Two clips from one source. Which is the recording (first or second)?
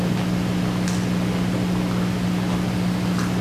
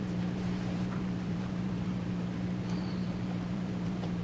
first